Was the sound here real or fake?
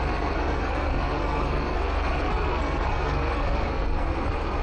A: fake